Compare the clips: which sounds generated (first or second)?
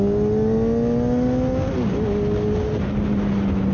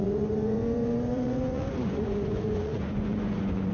second